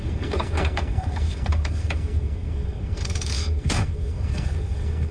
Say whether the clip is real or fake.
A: fake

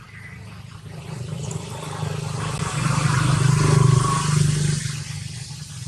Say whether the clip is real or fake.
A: real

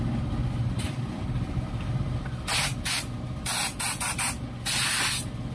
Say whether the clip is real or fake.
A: real